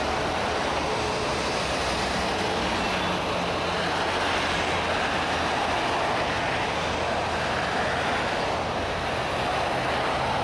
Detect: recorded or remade recorded